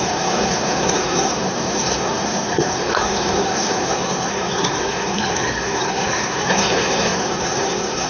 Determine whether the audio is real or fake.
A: fake